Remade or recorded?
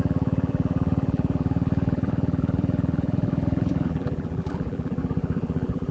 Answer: remade